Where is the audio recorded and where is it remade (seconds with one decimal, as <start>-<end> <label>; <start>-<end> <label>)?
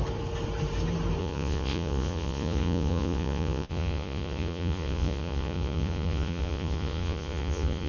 0.0-1.2 recorded; 1.2-7.9 remade